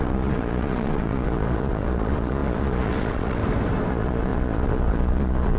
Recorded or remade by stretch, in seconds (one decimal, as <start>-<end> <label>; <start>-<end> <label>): 0.0-3.4 remade; 3.4-3.9 recorded; 3.9-5.6 remade